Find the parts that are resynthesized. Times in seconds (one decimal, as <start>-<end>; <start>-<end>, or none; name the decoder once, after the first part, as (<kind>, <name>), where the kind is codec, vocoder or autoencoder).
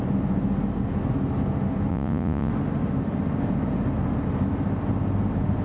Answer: 1.9-2.5 (vocoder, Vocos)